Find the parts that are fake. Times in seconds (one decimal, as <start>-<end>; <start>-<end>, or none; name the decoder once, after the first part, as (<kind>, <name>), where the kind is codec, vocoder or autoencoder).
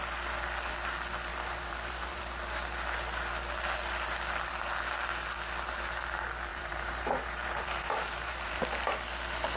1.3-2.2 (vocoder, BigVGAN v2); 6.5-8.6